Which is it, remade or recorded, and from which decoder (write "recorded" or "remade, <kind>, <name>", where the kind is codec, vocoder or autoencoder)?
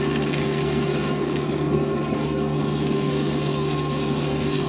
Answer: remade, codec, SNAC